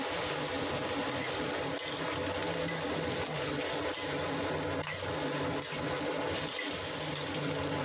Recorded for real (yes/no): yes